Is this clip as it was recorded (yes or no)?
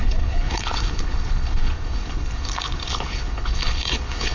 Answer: no